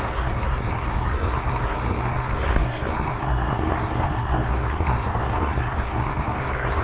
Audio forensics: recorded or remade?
remade